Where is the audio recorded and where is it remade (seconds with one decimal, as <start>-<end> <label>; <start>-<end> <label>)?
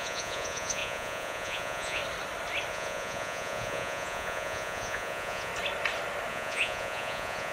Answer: 0.0-2.0 remade; 2.0-2.7 recorded; 2.7-5.5 remade; 5.5-6.3 recorded; 6.3-7.5 remade